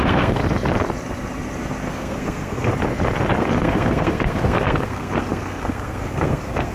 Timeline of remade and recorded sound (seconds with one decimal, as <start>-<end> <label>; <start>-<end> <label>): 0.0-0.4 remade; 0.4-1.9 recorded; 1.9-2.7 remade; 2.7-3.4 recorded; 3.4-6.7 remade

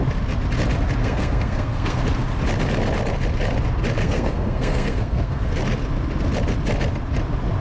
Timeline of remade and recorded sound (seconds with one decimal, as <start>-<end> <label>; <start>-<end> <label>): 0.0-1.0 recorded; 1.0-2.0 remade; 2.0-4.0 recorded; 4.0-5.6 remade; 5.6-7.6 recorded

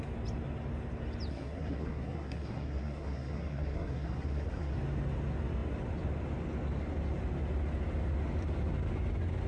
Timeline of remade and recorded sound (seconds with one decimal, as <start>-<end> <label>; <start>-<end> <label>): 0.0-1.3 recorded; 1.3-4.7 remade; 4.7-9.5 recorded

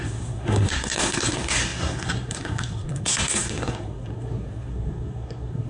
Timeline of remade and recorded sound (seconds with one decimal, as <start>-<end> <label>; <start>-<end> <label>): 0.0-5.7 remade

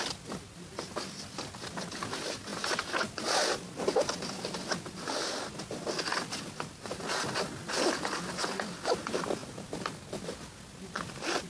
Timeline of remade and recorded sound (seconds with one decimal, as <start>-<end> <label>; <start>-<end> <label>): 0.0-11.5 recorded

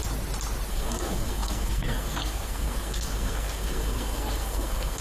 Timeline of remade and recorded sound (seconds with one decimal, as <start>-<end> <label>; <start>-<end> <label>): 0.0-0.7 recorded; 0.7-5.0 remade

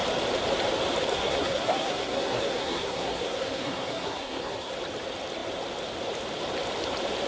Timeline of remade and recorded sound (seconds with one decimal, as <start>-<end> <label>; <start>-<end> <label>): 0.0-1.1 recorded; 1.1-4.7 remade; 4.7-7.3 recorded

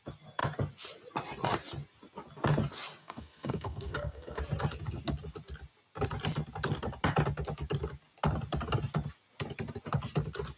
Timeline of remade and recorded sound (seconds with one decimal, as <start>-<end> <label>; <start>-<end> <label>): 0.0-3.0 recorded; 3.0-4.4 remade; 4.4-10.6 recorded